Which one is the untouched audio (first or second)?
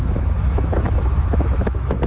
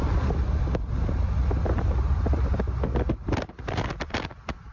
second